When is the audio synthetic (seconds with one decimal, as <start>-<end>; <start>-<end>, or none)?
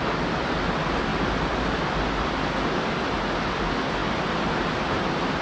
none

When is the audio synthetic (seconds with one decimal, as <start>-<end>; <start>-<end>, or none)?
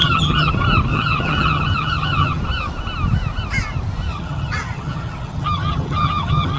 0.0-0.5; 0.9-2.4; 4.1-6.6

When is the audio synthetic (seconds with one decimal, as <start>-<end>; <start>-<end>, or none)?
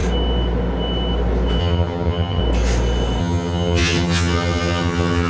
1.6-2.4; 3.2-5.3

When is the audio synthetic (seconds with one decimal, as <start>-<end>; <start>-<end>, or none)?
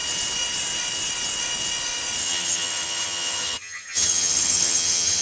2.2-5.2